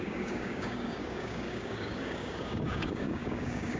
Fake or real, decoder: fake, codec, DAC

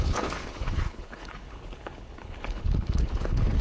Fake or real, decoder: fake, codec, HILCodec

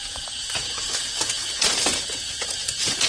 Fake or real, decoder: fake, vocoder, Vocos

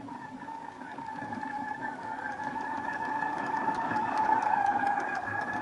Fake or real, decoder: fake, codec, DAC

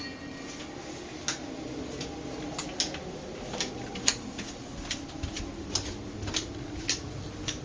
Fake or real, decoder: real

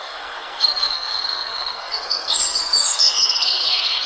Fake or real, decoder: fake, codec, SNAC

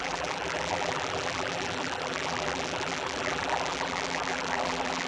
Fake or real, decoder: fake, vocoder, BigVGAN v2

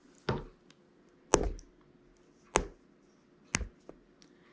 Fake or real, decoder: real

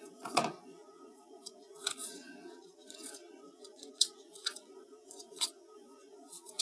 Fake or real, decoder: fake, vocoder, Vocos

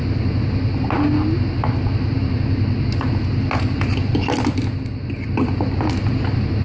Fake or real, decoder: real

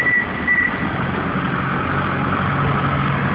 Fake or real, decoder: real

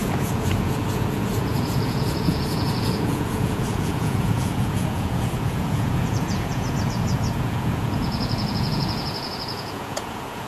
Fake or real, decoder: fake, vocoder, Vocos